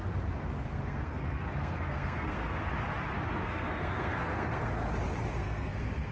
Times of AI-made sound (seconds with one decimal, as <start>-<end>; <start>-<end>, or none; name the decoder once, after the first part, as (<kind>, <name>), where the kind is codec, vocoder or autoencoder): 0.6-2.7 (codec, SNAC); 3.4-4.7; 5.3-6.1